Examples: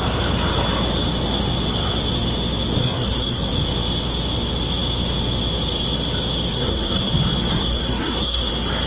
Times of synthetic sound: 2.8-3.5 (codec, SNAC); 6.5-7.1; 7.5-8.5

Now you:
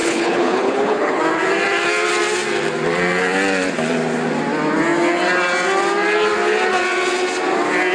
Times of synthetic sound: 0.0-1.2 (codec, HILCodec)

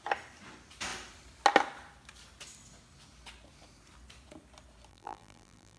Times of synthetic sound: 4.9-5.8 (vocoder, BigVGAN v2)

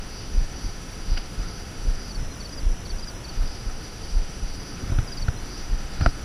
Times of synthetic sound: 0.0-2.1 (autoencoder, DAC-VAE); 3.3-4.9; 5.4-6.2

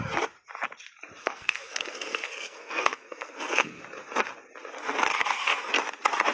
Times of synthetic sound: 1.2-3.8 (codec, SNAC); 5.1-5.7